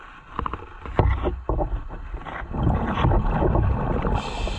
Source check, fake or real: real